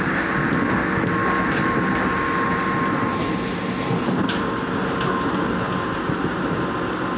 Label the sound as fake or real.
real